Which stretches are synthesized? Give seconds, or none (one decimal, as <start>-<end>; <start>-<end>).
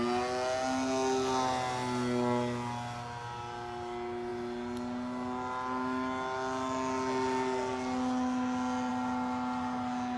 none